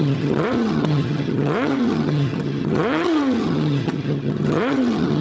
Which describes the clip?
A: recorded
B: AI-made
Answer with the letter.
B